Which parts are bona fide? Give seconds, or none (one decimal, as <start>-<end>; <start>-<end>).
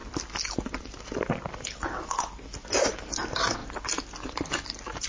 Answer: 0.0-5.1